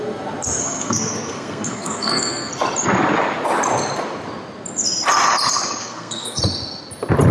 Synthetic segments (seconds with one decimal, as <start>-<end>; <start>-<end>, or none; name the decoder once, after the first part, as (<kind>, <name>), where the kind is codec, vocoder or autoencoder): 0.6-2.5 (codec, SNAC); 5.8-6.4